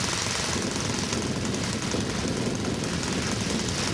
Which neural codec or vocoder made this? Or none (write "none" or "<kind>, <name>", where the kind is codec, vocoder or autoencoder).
none